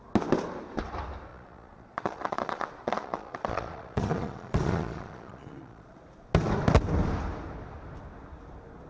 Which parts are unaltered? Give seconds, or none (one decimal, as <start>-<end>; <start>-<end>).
0.0-1.3; 6.0-8.9